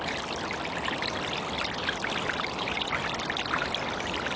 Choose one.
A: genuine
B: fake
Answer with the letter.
A